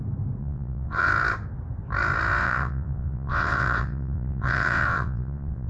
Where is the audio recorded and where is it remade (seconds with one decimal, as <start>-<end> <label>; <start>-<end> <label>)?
0.0-0.4 recorded; 0.4-1.1 remade; 1.1-2.4 recorded; 2.4-5.7 remade